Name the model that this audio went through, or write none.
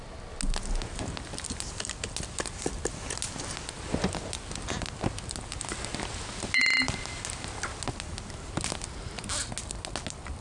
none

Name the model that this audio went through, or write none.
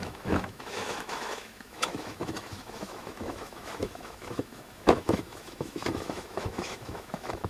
autoencoder, DAC-VAE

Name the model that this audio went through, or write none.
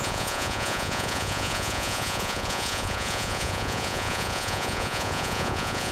vocoder, Vocos